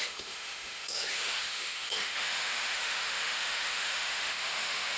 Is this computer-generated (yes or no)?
yes